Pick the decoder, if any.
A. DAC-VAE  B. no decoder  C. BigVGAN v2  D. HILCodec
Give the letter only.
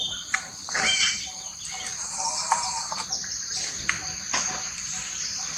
C